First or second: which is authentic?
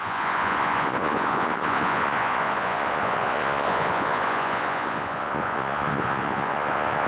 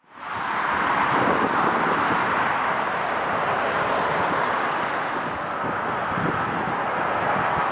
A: second